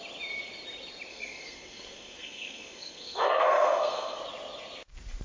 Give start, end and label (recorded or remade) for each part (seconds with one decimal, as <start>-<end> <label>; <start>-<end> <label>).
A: 0.0-1.1 recorded; 1.1-4.2 remade; 4.2-5.2 recorded